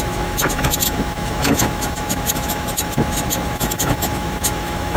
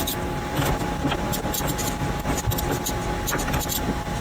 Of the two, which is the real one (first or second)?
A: second